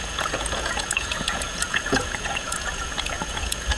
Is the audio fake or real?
fake